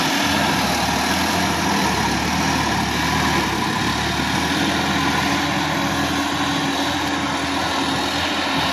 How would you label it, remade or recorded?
recorded